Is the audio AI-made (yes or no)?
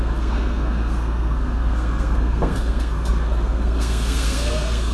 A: yes